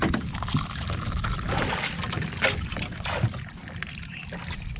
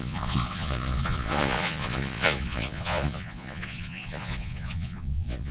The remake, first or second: second